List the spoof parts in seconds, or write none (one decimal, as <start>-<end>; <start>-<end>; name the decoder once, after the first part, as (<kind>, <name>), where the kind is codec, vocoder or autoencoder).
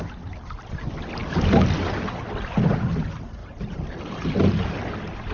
none